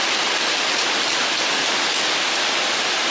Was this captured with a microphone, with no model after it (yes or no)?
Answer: yes